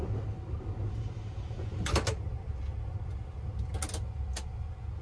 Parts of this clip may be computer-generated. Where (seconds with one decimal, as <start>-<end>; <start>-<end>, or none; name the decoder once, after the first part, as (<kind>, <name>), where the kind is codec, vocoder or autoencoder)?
none